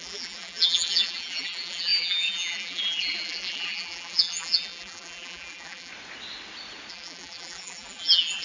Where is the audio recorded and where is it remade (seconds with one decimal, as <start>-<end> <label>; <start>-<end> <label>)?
0.0-5.9 remade; 5.9-6.9 recorded; 6.9-8.4 remade